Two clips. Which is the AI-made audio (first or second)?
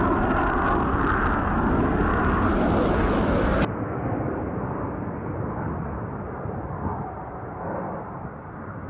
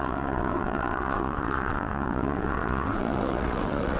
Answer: second